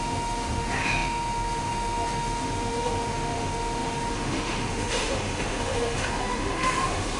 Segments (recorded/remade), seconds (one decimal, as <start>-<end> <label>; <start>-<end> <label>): 0.0-7.2 remade